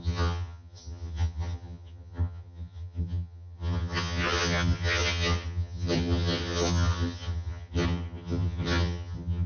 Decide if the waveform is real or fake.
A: fake